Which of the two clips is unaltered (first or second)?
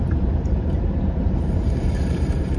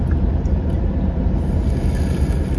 second